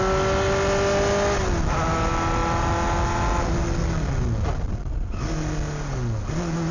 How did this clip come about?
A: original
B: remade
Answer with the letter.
A